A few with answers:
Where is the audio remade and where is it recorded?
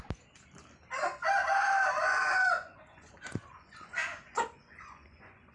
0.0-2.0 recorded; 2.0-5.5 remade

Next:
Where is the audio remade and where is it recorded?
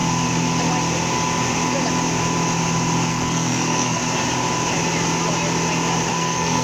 0.0-3.1 recorded; 3.1-4.0 remade; 4.0-6.1 recorded; 6.1-6.6 remade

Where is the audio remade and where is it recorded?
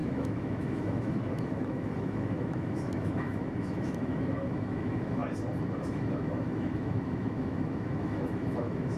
0.0-5.2 remade; 5.2-5.8 recorded; 5.8-9.0 remade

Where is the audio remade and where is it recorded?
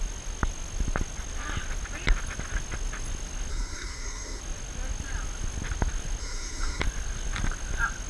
0.0-3.5 recorded; 3.5-4.4 remade; 4.4-6.2 recorded; 6.2-6.8 remade; 6.8-8.1 recorded